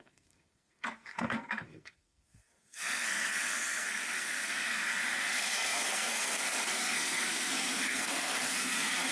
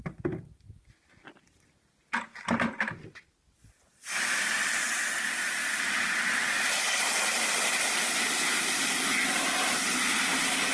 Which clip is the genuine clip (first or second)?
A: second